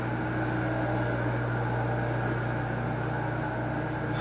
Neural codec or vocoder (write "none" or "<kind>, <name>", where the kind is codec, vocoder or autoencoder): none